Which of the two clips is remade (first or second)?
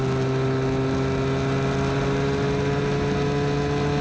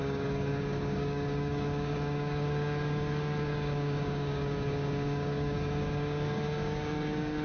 second